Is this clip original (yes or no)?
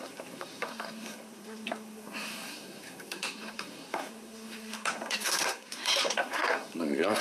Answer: no